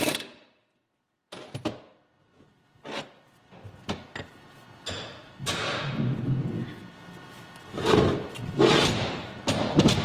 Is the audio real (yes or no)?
yes